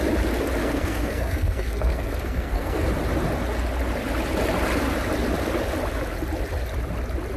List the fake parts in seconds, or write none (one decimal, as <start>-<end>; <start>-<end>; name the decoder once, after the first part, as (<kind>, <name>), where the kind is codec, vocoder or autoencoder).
0.6-2.9 (codec, SNAC)